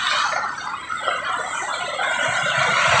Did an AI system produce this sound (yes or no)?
no